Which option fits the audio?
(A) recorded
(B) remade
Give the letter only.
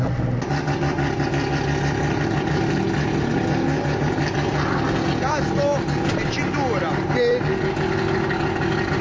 A